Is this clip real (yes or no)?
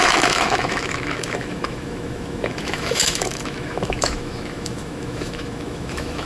no